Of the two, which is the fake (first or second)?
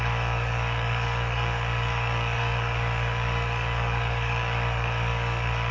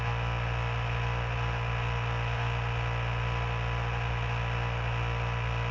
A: first